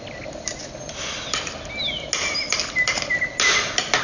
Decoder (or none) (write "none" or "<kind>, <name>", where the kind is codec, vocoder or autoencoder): none